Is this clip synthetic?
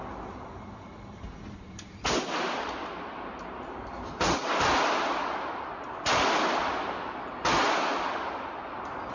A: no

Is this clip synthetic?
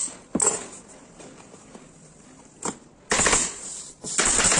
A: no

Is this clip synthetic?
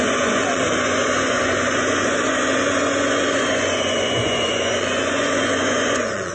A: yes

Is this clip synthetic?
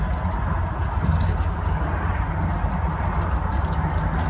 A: no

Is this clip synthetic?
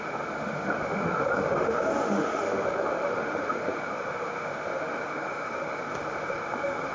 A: yes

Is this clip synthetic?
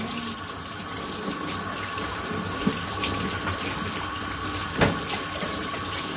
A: no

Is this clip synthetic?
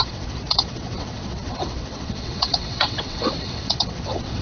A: yes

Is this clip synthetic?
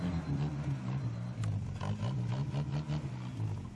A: no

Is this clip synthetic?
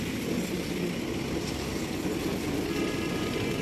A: no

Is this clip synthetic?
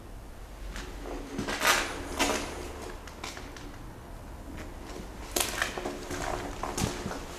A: no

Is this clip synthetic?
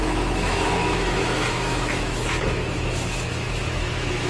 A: yes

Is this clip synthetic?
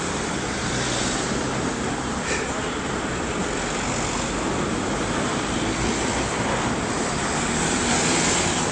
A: no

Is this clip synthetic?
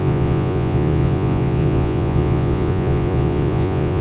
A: yes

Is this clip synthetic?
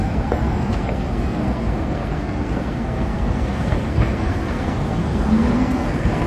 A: yes